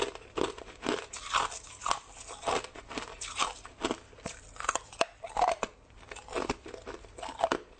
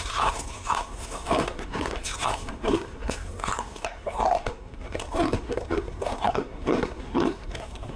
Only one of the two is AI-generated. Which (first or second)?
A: second